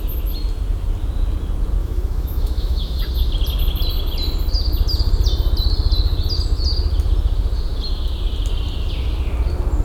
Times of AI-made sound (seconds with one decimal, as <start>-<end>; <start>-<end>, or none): 1.8-3.0